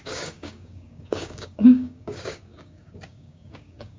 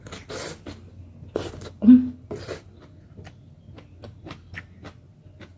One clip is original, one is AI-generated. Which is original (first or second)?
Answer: second